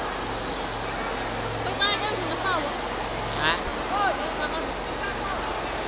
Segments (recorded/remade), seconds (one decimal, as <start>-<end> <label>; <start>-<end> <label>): 0.0-5.9 recorded